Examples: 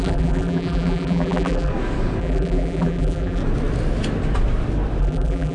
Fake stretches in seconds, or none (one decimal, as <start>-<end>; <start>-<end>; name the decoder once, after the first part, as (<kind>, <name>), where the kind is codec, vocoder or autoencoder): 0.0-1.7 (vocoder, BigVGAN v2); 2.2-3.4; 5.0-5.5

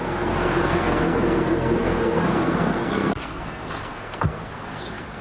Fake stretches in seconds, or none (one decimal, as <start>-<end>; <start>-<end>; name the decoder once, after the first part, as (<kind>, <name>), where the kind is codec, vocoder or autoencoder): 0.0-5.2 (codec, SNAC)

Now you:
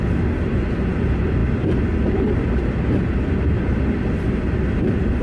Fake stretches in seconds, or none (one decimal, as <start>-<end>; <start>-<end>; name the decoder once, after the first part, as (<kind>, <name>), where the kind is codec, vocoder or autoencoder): none